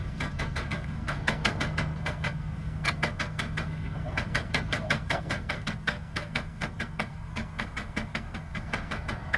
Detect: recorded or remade remade